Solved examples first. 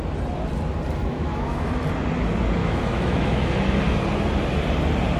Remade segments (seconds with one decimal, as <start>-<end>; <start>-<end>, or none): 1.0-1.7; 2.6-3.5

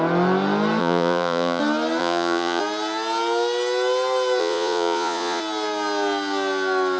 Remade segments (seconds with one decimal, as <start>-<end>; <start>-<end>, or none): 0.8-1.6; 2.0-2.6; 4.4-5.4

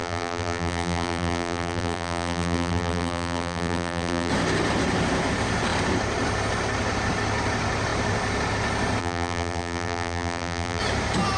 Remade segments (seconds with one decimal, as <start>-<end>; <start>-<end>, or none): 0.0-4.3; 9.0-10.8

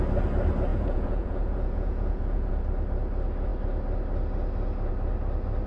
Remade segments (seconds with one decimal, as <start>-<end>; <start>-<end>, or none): 0.7-2.6

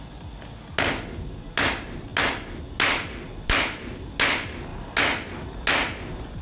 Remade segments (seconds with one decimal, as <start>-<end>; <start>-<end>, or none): none